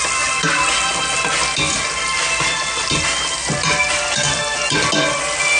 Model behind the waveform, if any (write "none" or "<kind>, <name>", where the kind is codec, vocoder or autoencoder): none